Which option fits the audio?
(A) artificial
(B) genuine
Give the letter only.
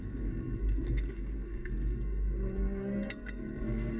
A